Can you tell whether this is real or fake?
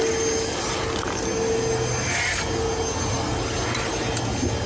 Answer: real